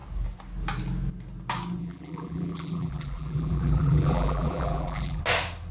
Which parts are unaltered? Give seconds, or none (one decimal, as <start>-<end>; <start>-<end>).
0.0-1.8; 5.2-5.7